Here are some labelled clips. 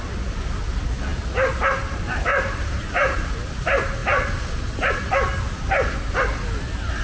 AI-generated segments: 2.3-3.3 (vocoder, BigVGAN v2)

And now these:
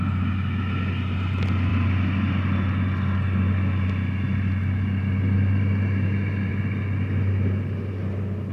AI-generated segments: none

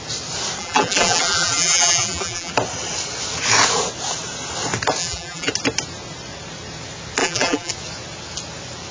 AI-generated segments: 0.6-2.5 (vocoder, BigVGAN v2); 5.0-5.5; 7.2-7.7

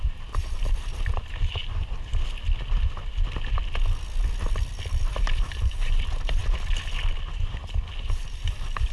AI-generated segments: 0.0-1.6 (vocoder, BigVGAN v2); 5.1-6.4; 8.0-8.9

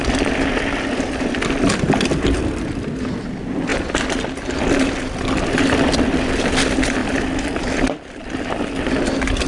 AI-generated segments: 0.0-3.7 (vocoder, BigVGAN v2); 5.0-9.5

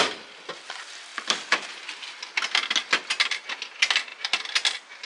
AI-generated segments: 1.1-2.7 (vocoder, BigVGAN v2)

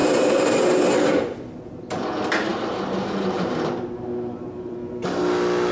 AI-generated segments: 0.0-0.8 (vocoder, BigVGAN v2); 2.5-5.2